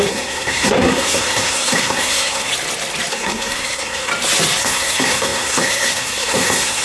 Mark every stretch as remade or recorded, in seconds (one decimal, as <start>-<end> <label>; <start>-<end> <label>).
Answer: 0.0-2.5 remade; 2.5-3.1 recorded; 3.1-4.1 remade; 4.1-4.6 recorded; 4.6-6.8 remade